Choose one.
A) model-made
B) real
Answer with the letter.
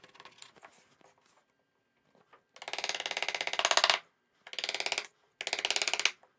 B